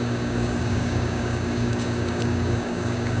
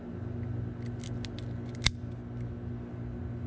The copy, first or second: first